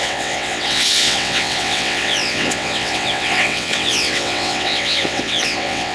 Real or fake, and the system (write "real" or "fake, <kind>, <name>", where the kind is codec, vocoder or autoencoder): fake, vocoder, WaveNeXt